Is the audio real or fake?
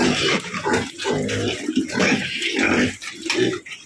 fake